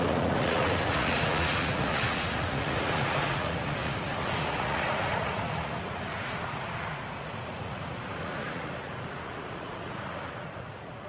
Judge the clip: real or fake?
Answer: fake